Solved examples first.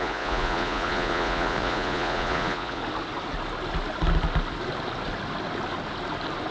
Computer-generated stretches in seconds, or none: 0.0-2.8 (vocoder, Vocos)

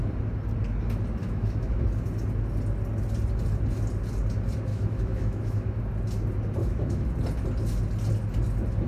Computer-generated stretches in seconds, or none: 1.2-1.8 (autoencoder, DAC-VAE); 4.7-5.8; 6.6-7.1